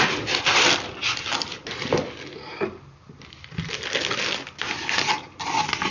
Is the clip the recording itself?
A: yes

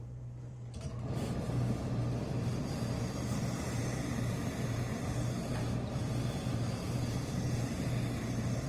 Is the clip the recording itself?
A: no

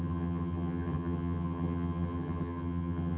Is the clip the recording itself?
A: no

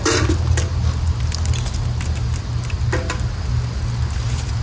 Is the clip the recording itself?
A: yes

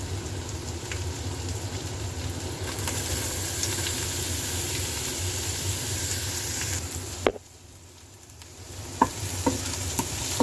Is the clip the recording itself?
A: no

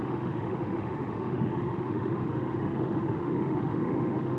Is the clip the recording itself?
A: no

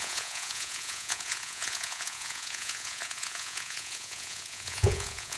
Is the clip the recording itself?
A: no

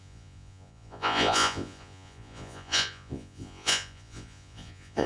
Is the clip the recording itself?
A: no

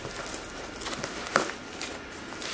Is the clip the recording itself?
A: yes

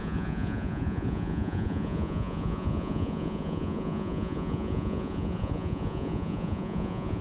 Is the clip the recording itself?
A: no